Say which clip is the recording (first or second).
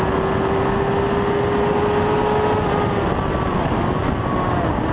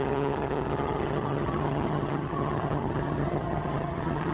first